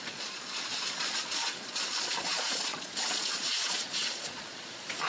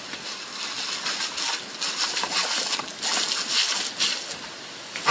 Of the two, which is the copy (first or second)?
first